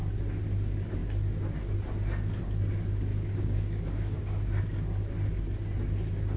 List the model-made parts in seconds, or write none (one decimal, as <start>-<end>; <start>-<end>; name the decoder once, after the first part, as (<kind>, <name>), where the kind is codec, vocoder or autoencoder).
3.1-4.6 (codec, DAC)